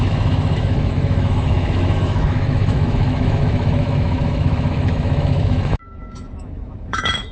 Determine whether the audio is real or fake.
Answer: fake